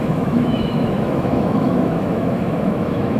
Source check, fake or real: fake